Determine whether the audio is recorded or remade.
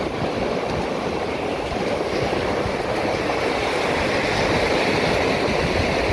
recorded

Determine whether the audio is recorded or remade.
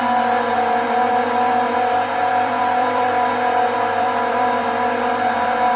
remade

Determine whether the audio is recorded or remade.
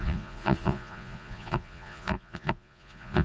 remade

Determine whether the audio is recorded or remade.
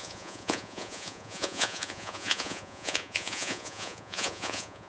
remade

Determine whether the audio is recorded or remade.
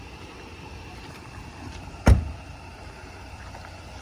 recorded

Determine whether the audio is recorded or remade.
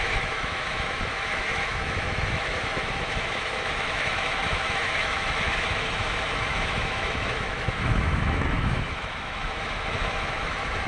remade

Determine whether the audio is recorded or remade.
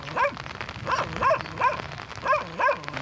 recorded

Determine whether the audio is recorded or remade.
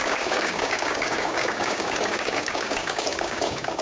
remade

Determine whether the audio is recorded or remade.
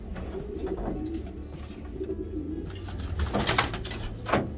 recorded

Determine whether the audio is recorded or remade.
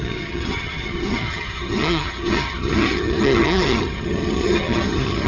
remade